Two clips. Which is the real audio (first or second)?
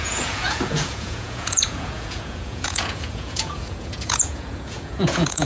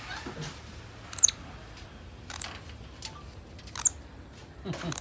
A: second